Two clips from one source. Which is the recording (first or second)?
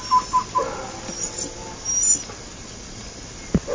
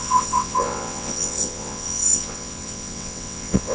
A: first